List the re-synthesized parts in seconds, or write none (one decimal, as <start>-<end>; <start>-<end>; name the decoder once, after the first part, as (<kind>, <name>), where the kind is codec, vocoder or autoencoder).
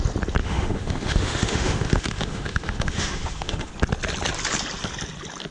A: 0.4-3.7 (autoencoder, DAC-VAE)